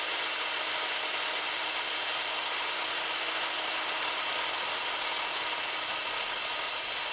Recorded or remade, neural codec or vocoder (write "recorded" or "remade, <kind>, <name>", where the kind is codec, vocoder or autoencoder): recorded